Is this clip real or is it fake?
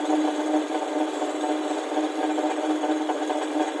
real